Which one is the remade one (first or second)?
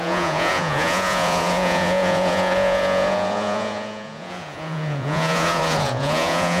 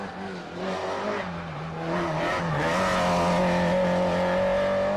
first